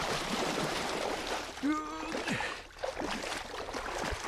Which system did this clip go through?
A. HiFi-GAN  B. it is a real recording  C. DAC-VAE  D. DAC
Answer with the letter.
B